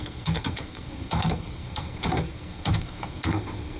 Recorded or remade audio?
remade